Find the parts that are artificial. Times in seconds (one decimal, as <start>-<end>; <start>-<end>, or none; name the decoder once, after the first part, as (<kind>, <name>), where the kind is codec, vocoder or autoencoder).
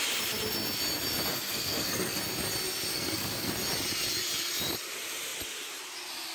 1.3-2.2 (codec, SNAC); 2.9-3.5